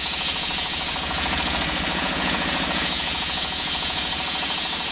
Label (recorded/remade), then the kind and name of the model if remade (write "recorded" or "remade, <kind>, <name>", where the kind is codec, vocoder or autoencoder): remade, vocoder, Vocos